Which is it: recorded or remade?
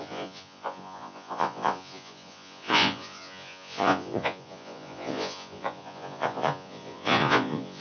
remade